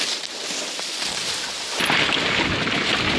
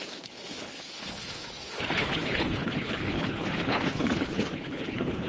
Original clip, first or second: first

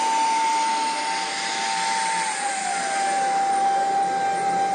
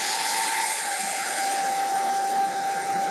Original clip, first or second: first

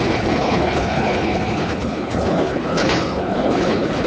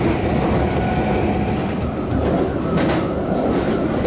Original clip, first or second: second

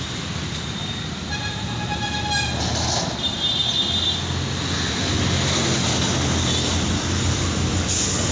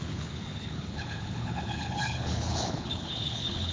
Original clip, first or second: first